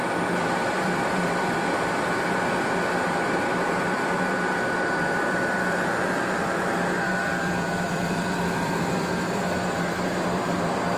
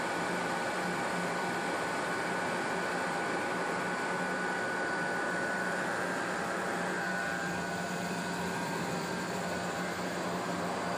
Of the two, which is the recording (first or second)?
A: second